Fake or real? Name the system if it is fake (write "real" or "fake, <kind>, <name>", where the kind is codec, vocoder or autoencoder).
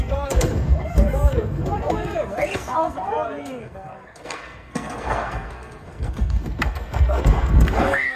fake, codec, SNAC